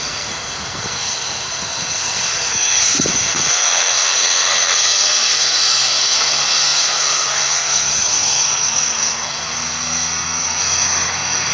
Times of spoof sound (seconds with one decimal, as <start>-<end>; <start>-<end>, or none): 0.0-11.5